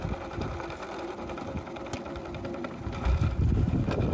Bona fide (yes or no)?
yes